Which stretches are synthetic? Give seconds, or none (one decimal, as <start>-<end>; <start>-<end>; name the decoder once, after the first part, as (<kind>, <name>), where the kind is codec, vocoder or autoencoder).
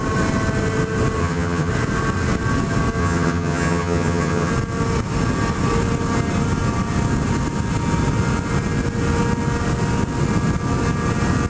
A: 1.2-1.7 (vocoder, HiFi-GAN); 3.0-4.5